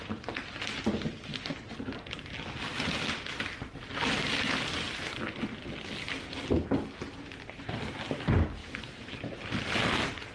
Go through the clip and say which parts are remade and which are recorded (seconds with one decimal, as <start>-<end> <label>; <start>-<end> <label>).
0.0-8.6 recorded; 8.6-9.1 remade; 9.1-10.3 recorded